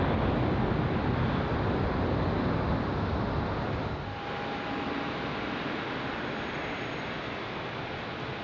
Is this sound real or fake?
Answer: real